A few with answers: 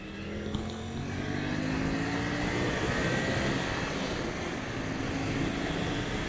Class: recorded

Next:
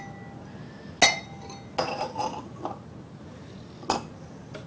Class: recorded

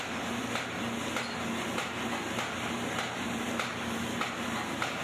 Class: recorded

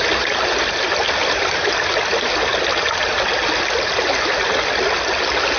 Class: recorded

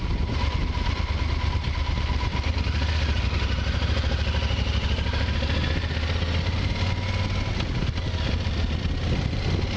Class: recorded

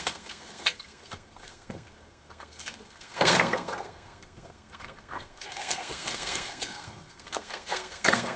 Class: remade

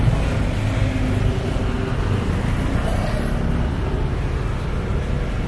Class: recorded